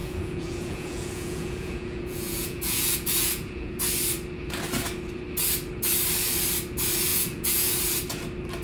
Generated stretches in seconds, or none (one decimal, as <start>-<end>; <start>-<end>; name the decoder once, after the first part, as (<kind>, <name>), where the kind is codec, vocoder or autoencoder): 0.0-3.8 (vocoder, Vocos); 7.1-7.7